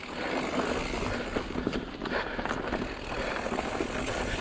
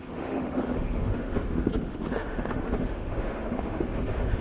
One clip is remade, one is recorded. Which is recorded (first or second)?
first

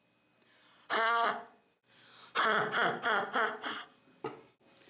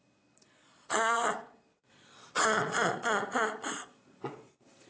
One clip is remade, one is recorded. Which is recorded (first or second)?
first